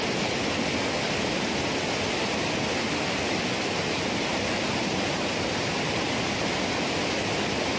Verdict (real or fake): real